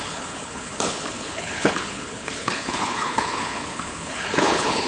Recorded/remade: remade